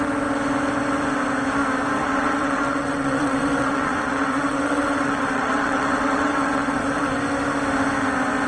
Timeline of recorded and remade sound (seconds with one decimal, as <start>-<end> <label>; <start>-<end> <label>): 0.0-2.0 recorded; 2.0-7.1 remade; 7.1-8.5 recorded